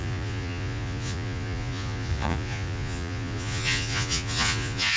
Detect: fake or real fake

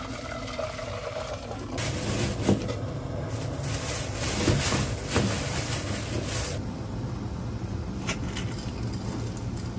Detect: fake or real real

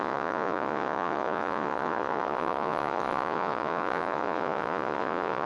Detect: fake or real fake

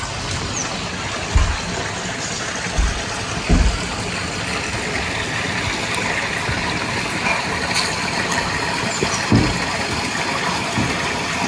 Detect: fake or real real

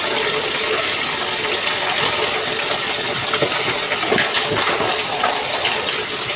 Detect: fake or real real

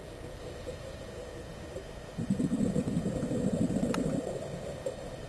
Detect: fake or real real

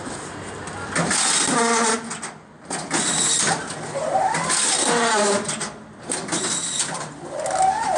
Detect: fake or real real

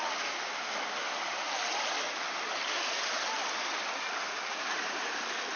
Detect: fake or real real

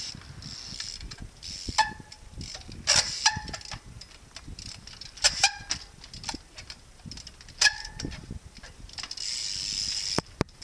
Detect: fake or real real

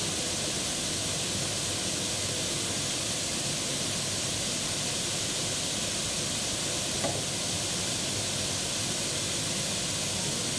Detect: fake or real real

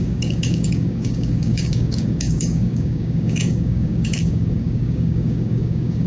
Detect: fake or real fake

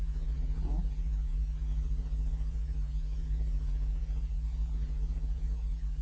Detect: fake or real fake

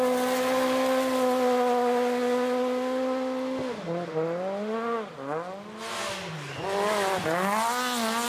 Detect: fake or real real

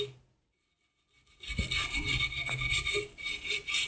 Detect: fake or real real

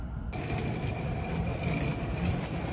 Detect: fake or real real